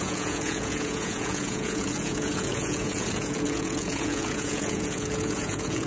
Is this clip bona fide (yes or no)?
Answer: no